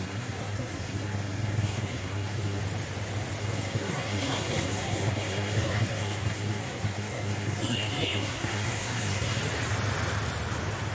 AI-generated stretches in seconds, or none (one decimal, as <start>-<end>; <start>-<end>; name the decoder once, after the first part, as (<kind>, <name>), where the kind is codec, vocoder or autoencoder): 0.0-2.6 (codec, SNAC); 3.4-9.4